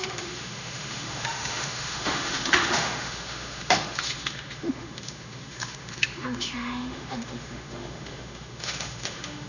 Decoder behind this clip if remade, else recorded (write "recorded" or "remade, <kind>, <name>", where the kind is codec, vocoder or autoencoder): remade, autoencoder, DAC-VAE